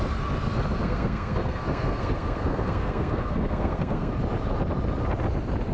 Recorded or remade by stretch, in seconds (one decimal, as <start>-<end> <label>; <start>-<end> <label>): 0.0-0.8 recorded; 0.8-4.1 remade; 4.1-5.7 recorded